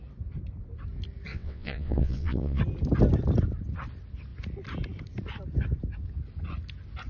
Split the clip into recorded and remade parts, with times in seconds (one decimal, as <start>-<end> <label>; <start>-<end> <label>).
0.0-1.3 recorded; 1.3-2.6 remade; 2.6-7.1 recorded